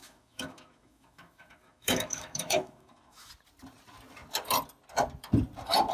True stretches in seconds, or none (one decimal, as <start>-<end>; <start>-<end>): 3.3-5.9